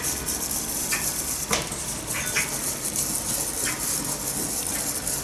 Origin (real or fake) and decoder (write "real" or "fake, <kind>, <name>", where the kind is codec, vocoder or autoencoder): real